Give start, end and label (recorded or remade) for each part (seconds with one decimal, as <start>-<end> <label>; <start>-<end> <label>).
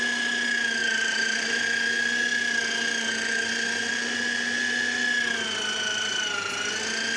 0.0-0.8 recorded; 0.8-1.6 remade; 1.6-7.2 recorded